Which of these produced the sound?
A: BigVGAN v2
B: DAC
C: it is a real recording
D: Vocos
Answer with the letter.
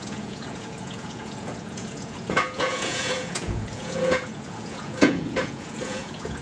D